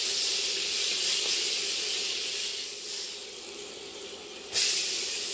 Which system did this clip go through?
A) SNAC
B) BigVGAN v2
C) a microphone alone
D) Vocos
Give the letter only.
C